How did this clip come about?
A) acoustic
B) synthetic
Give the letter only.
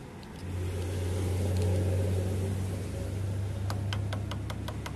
A